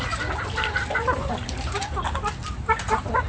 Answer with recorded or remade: recorded